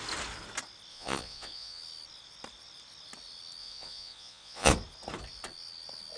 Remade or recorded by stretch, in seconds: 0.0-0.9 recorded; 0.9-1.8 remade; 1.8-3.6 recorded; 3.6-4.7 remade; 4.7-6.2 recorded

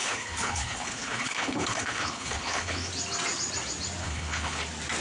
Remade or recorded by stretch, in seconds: 0.0-2.9 remade; 2.9-4.0 recorded; 4.0-4.6 remade; 4.6-5.0 recorded

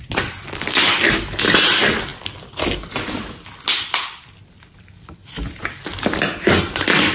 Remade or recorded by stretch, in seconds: 0.0-7.1 recorded

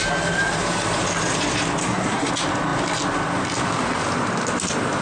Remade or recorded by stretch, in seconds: 0.0-1.8 recorded; 1.8-2.3 remade; 2.3-5.0 recorded

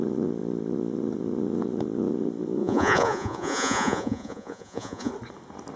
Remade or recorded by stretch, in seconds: 0.0-2.6 recorded; 2.6-5.1 remade; 5.1-5.8 recorded

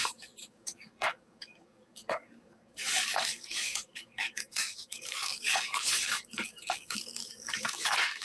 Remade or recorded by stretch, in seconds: 0.0-8.2 remade

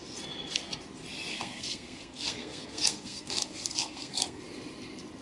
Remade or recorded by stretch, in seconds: 0.0-1.3 recorded; 1.3-4.4 remade; 4.4-5.2 recorded

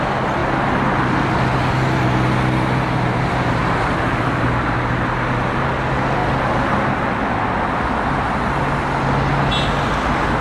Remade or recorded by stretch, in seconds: 0.0-10.4 recorded